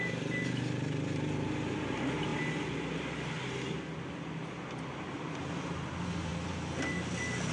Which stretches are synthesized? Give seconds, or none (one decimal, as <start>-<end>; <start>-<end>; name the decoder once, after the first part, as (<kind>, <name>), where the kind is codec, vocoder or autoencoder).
none